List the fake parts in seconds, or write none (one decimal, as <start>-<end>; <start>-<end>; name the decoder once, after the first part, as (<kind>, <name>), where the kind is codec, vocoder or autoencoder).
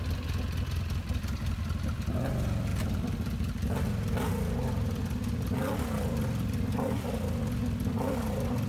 none